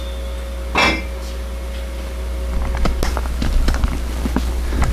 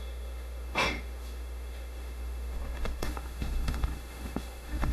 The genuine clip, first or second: first